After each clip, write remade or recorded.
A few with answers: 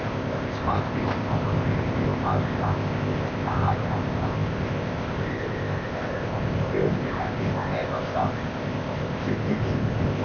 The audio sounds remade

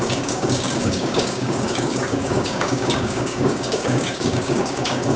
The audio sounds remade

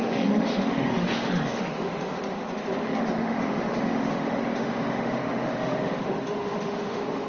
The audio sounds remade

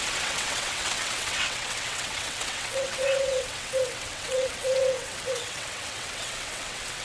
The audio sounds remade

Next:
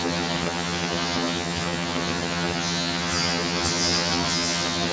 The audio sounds remade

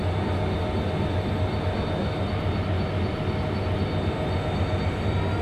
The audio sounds recorded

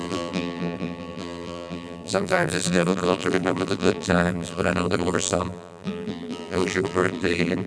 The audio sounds remade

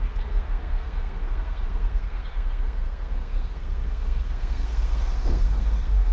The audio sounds remade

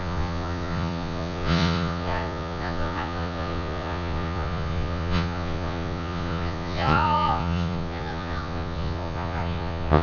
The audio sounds remade